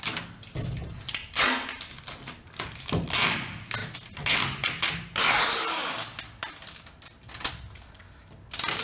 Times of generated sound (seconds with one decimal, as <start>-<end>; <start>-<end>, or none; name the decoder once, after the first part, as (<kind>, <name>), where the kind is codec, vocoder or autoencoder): none